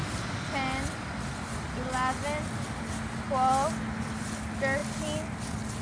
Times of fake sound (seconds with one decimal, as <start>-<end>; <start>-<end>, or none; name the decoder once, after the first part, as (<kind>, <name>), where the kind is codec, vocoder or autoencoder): none